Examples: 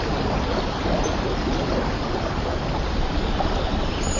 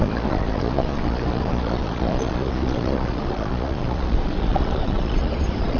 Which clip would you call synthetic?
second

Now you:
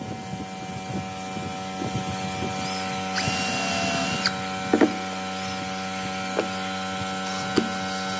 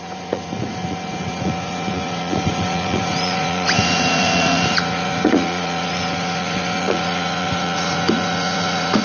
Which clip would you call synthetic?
second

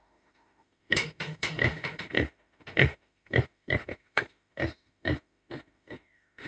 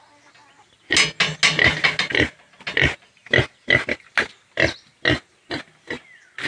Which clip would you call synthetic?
first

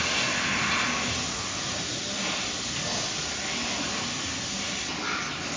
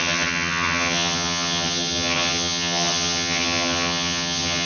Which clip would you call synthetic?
second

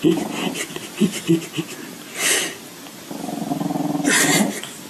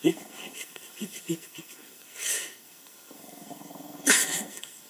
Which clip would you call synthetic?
second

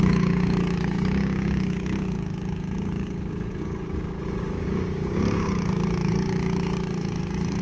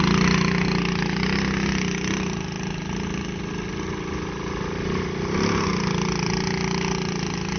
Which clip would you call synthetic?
first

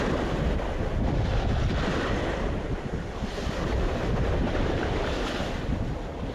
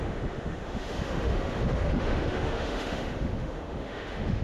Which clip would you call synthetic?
second